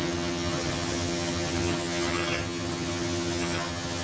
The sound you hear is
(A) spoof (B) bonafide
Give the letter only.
A